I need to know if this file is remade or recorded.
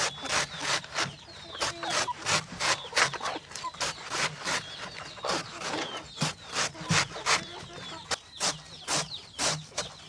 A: recorded